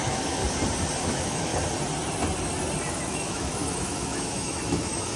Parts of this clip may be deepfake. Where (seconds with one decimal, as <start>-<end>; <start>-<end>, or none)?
0.0-0.4; 1.0-1.5; 2.9-5.2